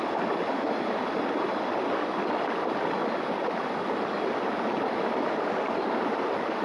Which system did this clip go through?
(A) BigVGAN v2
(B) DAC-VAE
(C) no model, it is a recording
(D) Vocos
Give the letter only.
C